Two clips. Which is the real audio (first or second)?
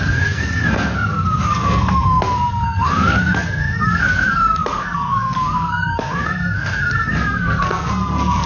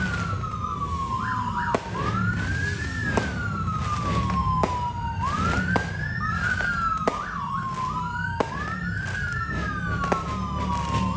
second